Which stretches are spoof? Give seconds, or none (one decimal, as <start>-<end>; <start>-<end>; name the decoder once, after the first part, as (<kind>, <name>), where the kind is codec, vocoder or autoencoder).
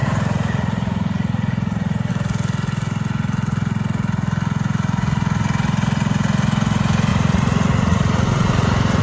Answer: 0.0-2.1 (vocoder, Vocos); 7.1-9.0